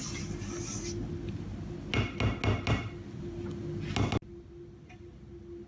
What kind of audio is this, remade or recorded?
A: recorded